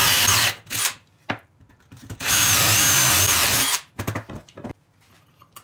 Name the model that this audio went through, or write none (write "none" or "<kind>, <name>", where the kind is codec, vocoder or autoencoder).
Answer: vocoder, BigVGAN v2